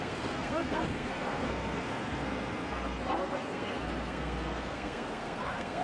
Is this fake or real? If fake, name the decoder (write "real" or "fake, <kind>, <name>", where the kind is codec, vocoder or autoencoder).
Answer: fake, codec, SNAC